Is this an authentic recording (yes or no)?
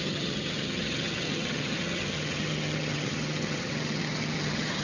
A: no